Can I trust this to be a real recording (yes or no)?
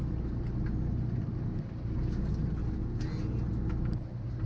yes